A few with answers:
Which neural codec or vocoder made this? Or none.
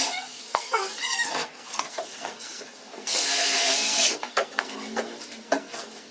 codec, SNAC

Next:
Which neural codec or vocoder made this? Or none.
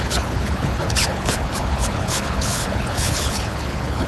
codec, HILCodec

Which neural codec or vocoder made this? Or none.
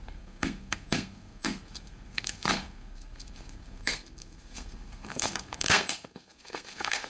codec, SNAC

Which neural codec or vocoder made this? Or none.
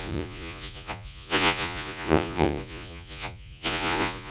vocoder, Vocos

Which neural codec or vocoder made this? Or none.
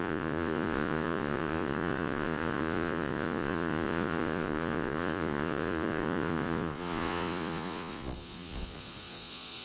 vocoder, Vocos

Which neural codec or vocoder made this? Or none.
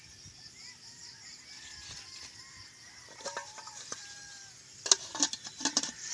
none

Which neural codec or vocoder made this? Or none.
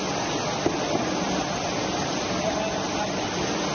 none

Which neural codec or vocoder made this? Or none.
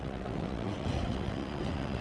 vocoder, WaveNeXt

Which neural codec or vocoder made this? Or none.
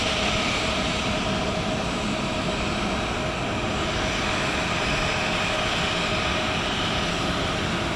none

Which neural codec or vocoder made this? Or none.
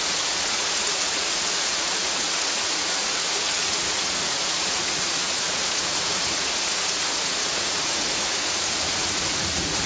vocoder, Vocos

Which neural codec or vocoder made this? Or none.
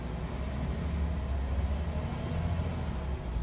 none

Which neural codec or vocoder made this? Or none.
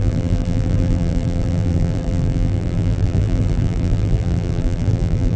vocoder, BigVGAN v2